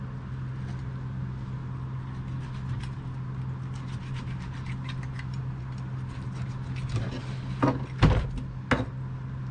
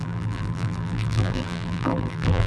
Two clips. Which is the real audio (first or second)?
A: first